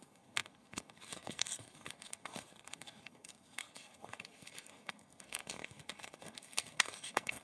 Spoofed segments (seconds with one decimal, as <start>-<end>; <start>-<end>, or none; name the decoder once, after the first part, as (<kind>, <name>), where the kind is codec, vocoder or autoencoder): 0.0-7.4 (codec, SNAC)